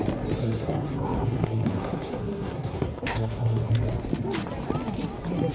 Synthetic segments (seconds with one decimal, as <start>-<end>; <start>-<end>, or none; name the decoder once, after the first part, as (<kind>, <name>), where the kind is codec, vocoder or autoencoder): 0.4-3.7 (codec, SNAC)